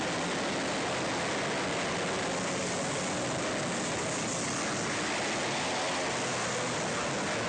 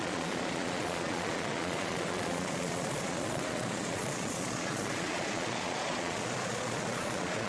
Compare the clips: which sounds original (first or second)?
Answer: first